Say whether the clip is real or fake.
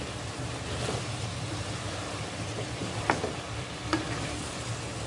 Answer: real